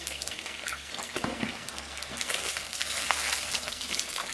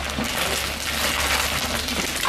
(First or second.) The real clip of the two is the second